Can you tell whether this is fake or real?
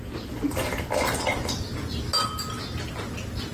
real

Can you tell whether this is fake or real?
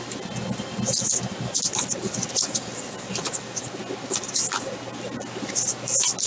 real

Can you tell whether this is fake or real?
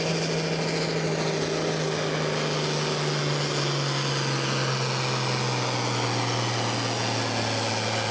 real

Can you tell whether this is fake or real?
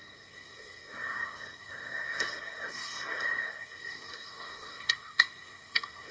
fake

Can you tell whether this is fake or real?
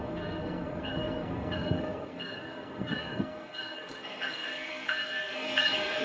fake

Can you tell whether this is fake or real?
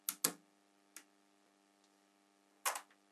real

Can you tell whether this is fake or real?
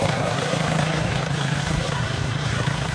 fake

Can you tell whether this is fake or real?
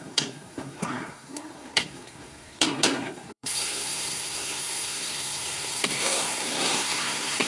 fake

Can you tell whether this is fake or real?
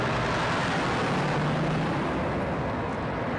real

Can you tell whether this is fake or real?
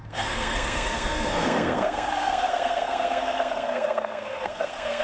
fake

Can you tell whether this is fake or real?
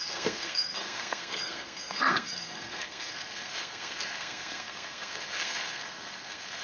fake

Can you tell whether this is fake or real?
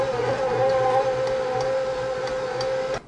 real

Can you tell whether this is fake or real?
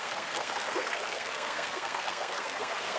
fake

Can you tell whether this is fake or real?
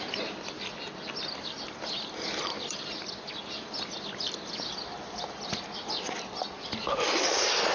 real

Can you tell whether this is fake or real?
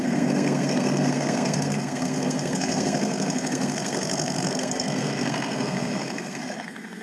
fake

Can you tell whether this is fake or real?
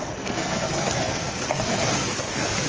fake